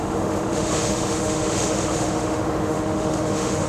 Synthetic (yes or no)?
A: yes